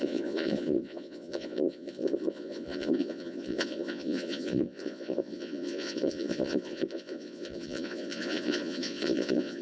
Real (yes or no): no